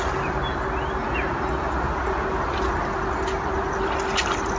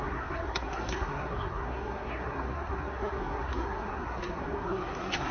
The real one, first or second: first